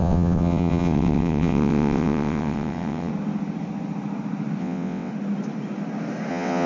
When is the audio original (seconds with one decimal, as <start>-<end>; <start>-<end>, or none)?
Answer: 3.1-4.6; 5.1-6.3